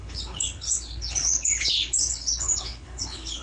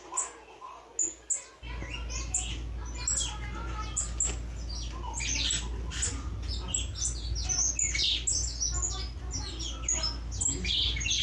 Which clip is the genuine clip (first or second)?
second